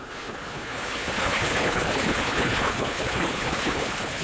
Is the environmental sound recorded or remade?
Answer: remade